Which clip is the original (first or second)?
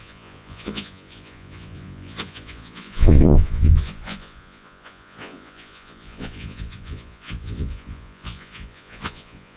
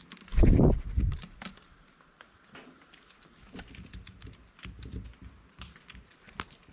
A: second